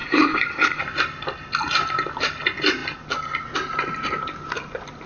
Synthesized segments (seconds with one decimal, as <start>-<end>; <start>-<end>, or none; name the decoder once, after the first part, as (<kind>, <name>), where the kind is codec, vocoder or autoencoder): 0.0-0.8 (codec, HILCodec)